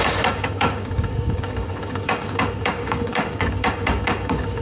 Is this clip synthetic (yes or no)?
yes